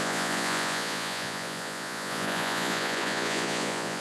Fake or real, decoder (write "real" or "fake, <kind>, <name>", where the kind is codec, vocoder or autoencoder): fake, vocoder, Vocos